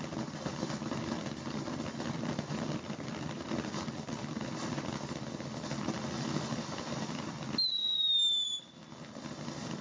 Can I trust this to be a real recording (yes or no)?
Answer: yes